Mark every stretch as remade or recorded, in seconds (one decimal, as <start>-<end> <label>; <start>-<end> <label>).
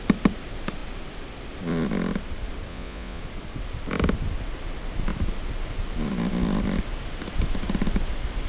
0.0-2.7 recorded; 2.7-3.2 remade; 3.2-8.5 recorded